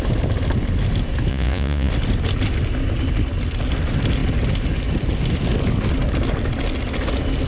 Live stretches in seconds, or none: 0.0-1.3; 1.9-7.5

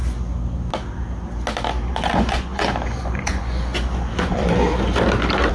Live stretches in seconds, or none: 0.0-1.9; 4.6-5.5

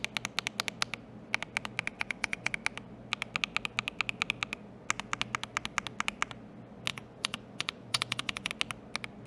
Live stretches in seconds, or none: 0.0-1.9; 2.5-6.9; 8.5-9.3

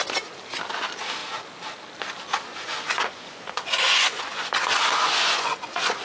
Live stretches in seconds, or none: 0.0-2.5

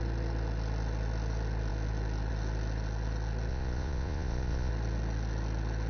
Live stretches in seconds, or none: 0.0-3.5; 4.7-5.9

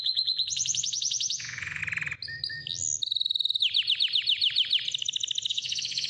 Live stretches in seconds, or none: 1.8-5.5

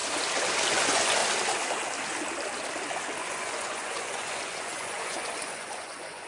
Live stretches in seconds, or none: 0.0-0.7; 1.2-3.2

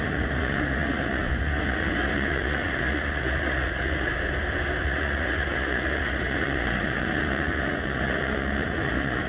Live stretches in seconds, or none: 4.1-4.8